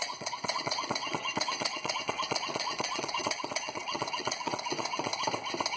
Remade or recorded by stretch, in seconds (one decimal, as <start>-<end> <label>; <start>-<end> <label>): 0.0-5.1 remade; 5.1-5.8 recorded